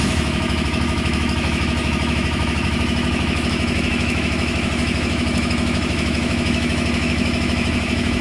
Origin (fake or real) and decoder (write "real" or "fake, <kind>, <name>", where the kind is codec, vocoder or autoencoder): fake, autoencoder, DAC-VAE